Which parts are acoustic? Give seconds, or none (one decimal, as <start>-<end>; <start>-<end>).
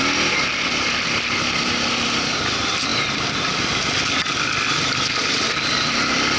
0.0-6.4